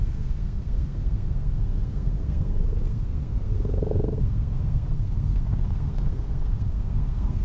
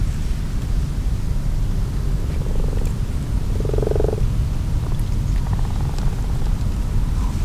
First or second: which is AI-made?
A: first